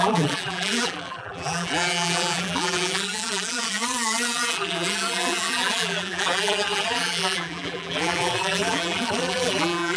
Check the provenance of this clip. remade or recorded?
remade